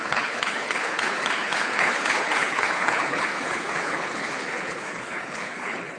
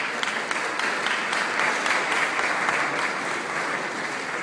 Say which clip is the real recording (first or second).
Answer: second